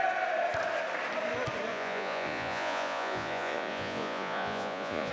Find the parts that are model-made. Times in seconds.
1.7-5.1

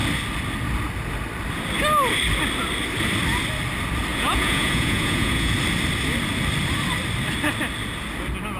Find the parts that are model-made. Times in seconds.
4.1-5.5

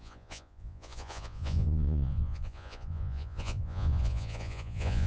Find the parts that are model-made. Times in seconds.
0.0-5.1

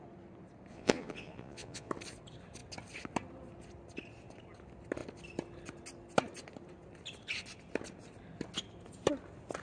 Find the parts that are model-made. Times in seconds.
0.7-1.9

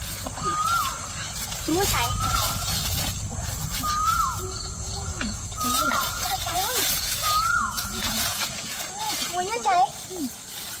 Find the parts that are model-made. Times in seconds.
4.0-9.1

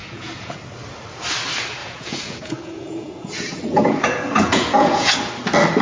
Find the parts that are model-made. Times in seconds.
0.0-0.6; 1.8-5.3

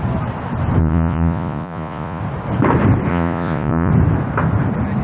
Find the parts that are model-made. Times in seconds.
0.8-2.2; 3.1-3.9